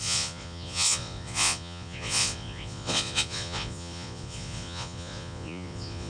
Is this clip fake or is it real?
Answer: fake